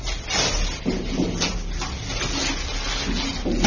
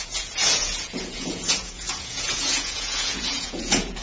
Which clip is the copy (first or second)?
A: second